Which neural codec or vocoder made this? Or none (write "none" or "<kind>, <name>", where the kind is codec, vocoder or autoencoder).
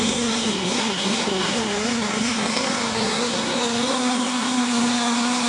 codec, SNAC